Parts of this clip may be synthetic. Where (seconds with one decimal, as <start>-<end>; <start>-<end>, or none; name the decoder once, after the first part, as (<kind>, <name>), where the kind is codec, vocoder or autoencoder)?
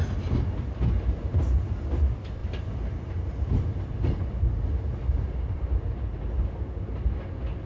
none